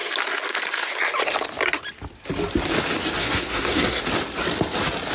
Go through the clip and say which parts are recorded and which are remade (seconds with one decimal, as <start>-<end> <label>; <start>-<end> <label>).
0.0-3.2 recorded; 3.2-4.0 remade; 4.0-5.1 recorded